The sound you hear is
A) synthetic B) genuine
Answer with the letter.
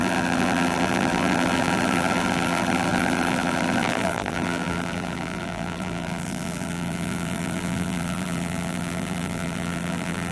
A